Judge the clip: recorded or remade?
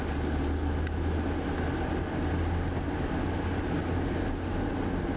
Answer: remade